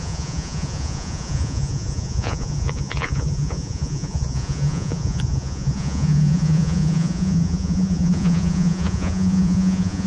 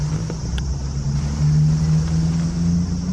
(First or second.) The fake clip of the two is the first